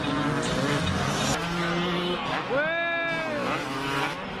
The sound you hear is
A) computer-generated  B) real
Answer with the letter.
B